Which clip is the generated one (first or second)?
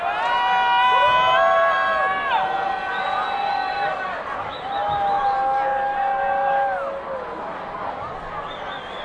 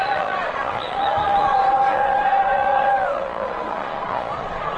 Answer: second